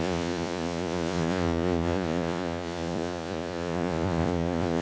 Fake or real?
fake